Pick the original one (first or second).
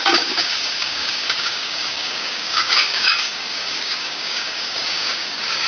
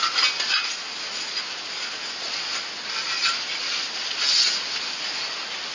second